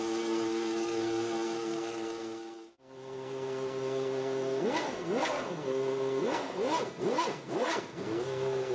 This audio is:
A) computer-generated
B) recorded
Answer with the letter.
A